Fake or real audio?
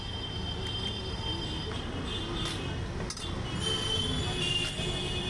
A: real